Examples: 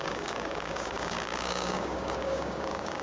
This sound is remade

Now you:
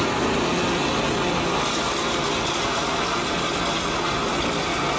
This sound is recorded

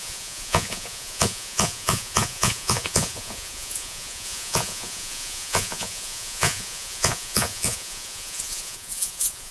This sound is remade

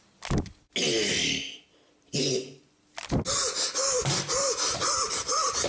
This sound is recorded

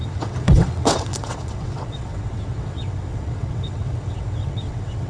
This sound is remade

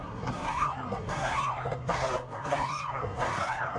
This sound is remade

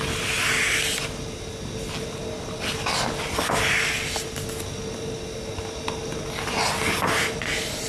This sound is recorded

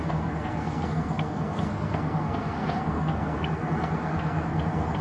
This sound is remade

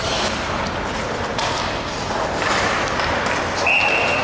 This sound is recorded